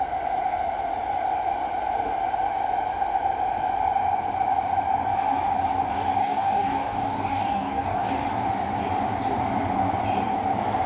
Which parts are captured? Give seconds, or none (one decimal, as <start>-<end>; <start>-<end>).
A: 0.0-6.2; 8.1-10.9